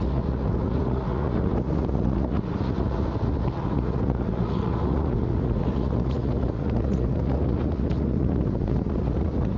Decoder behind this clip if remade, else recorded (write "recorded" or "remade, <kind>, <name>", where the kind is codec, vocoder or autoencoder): remade, vocoder, Vocos